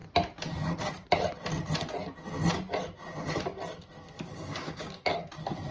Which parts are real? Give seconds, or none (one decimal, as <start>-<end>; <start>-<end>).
0.0-4.3; 5.3-5.7